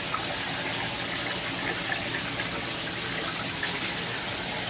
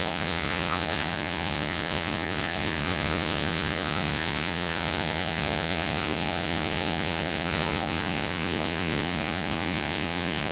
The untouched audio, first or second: first